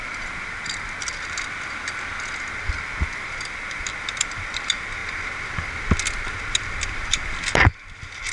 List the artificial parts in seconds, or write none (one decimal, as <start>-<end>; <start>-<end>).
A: 0.0-8.3